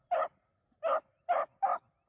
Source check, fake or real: real